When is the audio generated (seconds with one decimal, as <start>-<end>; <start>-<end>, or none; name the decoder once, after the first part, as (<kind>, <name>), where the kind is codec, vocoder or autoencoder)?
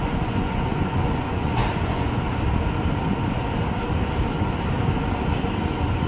0.0-2.2 (vocoder, Vocos)